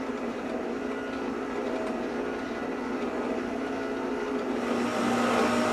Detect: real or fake real